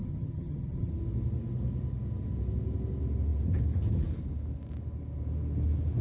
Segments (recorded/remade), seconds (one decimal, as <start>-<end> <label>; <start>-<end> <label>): 0.0-0.9 remade; 0.9-6.0 recorded